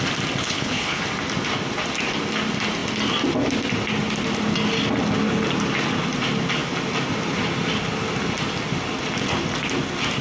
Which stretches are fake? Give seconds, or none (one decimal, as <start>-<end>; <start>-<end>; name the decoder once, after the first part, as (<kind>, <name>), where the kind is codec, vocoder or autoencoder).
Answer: 0.4-1.0 (codec, HILCodec)